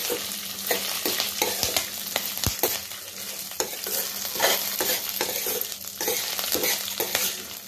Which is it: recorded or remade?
recorded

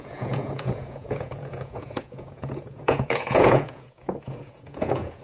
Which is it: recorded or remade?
remade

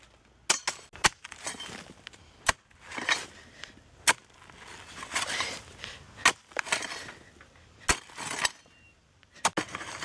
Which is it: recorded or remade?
recorded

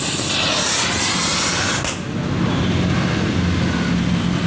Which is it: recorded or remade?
recorded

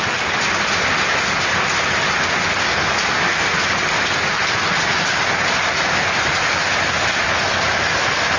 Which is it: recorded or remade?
recorded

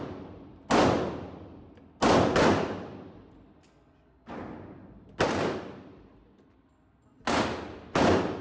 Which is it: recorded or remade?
recorded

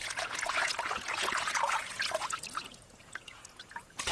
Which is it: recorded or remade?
remade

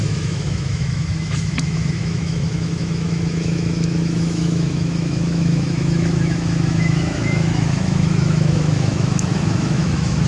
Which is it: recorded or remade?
remade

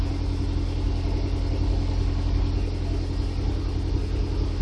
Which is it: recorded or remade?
recorded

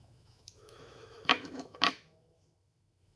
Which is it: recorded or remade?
remade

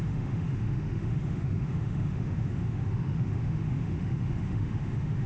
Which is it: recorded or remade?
remade